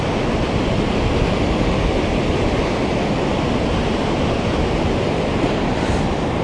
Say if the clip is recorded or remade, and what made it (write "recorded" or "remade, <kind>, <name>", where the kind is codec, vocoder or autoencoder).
recorded